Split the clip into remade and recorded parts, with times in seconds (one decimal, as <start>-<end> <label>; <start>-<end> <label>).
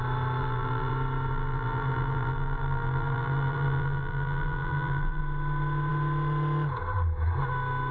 0.0-0.4 recorded; 0.4-0.9 remade; 0.9-1.3 recorded; 1.3-5.2 remade; 5.2-7.9 recorded